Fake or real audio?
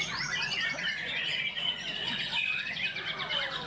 fake